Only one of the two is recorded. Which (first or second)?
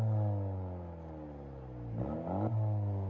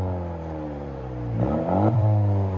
first